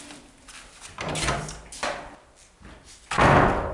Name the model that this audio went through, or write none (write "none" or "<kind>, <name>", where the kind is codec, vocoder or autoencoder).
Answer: none